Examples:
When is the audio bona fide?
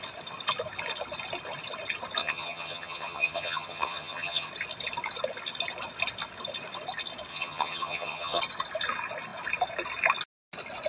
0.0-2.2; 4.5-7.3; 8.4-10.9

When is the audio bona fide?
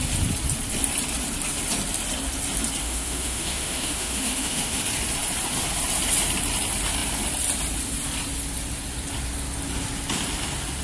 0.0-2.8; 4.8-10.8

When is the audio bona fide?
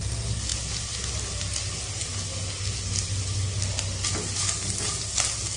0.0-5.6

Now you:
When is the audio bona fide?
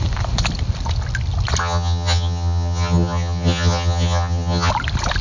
0.0-1.6; 4.7-5.2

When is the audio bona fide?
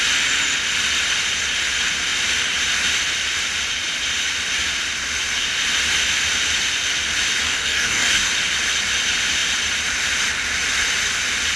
0.0-7.4; 8.3-11.6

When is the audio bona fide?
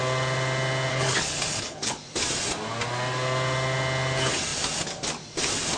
0.0-0.9; 2.0-5.8